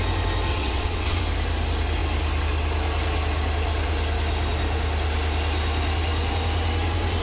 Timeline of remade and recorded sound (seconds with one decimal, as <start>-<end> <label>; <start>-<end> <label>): 0.0-0.5 recorded; 0.5-1.2 remade; 1.2-7.2 recorded